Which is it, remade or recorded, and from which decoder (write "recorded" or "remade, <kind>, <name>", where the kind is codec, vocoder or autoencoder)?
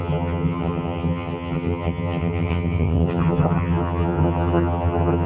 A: remade, vocoder, HiFi-GAN